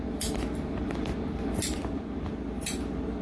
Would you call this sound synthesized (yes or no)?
no